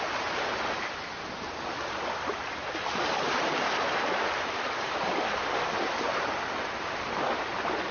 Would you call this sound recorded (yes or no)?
yes